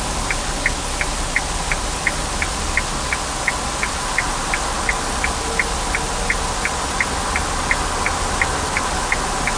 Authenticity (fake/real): real